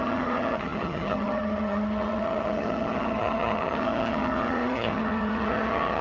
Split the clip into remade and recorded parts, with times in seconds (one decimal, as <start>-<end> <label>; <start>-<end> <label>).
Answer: 0.0-6.0 remade

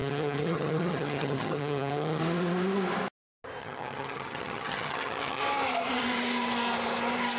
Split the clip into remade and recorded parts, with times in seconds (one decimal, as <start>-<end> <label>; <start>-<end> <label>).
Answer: 0.0-2.2 remade; 2.2-3.6 recorded; 3.6-5.4 remade; 5.4-7.4 recorded